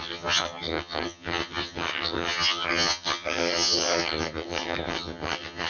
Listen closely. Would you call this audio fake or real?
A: fake